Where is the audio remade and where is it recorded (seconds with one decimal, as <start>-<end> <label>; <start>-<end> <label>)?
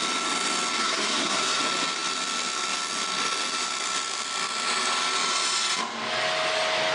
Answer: 0.0-0.8 recorded; 0.8-1.6 remade; 1.6-6.9 recorded